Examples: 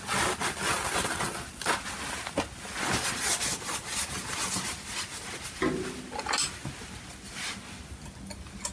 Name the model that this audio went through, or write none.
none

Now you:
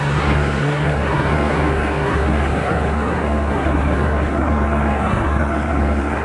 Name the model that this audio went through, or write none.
codec, SNAC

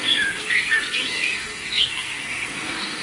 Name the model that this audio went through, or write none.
codec, SNAC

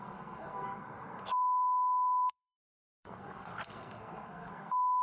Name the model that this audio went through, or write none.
codec, SNAC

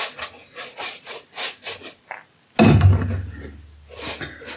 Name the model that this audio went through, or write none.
none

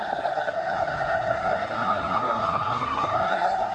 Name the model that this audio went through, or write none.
codec, SNAC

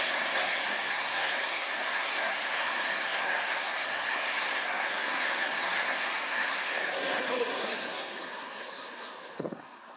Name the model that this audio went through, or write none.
codec, SNAC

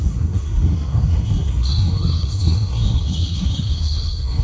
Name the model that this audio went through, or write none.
codec, SNAC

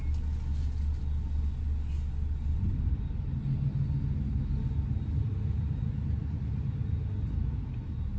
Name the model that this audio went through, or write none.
none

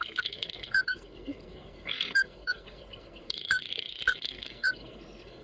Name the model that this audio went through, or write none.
codec, SNAC